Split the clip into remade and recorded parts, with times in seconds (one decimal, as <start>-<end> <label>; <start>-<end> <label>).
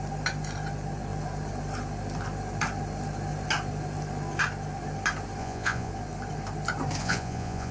0.0-5.4 recorded; 5.4-5.9 remade; 5.9-7.0 recorded; 7.0-7.7 remade